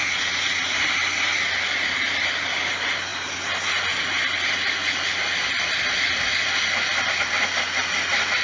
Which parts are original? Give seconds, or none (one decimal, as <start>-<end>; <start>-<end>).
0.0-8.4